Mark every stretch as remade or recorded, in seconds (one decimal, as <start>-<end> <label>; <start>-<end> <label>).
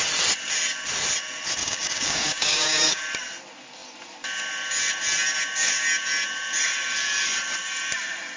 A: 0.0-1.6 recorded; 1.6-3.0 remade; 3.0-8.4 recorded